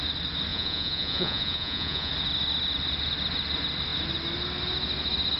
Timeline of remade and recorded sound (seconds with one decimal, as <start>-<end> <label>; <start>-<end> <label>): 0.0-0.5 recorded; 0.5-2.1 remade; 2.1-5.4 recorded